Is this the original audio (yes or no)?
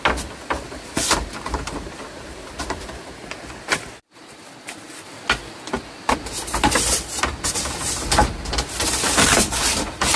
yes